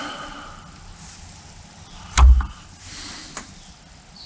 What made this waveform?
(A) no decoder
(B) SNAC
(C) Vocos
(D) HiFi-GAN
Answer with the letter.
A